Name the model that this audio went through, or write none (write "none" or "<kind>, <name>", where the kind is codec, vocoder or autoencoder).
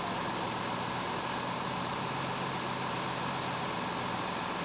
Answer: none